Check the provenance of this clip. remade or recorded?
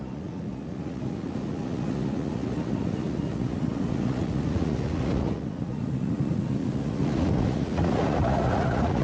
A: remade